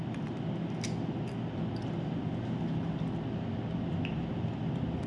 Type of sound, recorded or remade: recorded